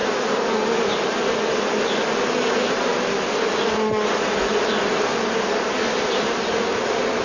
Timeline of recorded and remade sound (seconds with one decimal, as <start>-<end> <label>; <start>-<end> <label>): 0.0-7.2 recorded